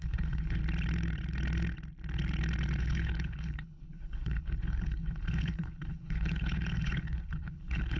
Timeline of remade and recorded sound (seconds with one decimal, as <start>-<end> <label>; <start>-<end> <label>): 0.0-0.6 remade; 0.6-2.8 recorded; 2.8-8.0 remade